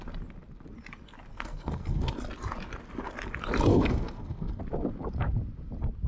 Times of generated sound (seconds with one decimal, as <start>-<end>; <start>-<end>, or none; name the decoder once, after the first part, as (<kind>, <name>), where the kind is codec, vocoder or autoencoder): 1.3-2.1 (codec, SNAC); 3.7-4.6